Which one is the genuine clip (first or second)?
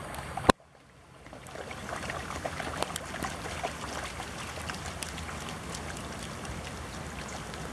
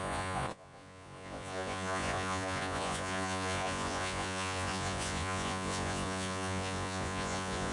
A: first